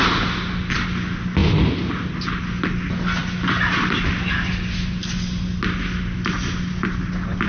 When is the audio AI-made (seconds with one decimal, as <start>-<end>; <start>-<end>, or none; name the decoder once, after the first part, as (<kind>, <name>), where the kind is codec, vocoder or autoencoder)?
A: none